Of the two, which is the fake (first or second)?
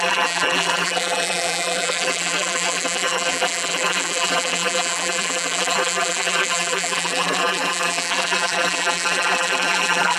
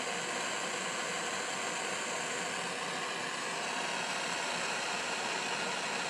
first